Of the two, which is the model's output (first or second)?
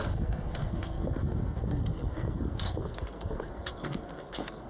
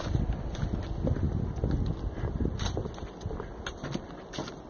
first